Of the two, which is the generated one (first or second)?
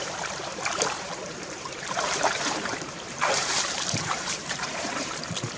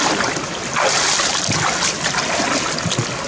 first